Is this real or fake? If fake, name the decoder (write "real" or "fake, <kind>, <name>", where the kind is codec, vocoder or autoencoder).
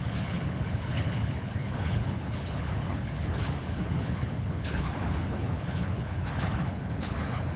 fake, codec, HILCodec